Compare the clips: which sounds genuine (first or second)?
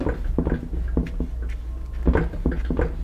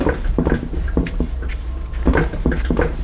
first